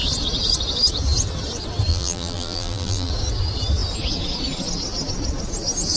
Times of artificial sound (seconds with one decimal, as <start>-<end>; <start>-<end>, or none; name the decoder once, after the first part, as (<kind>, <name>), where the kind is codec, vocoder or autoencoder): 1.9-3.1 (vocoder, BigVGAN v2)